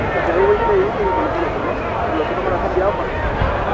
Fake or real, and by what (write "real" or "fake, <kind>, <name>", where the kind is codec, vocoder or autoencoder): real